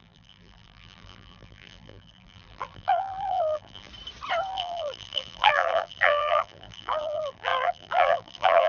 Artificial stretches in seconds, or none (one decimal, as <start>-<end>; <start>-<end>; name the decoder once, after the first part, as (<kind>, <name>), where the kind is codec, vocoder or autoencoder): 0.0-3.9 (vocoder, BigVGAN v2); 4.5-8.7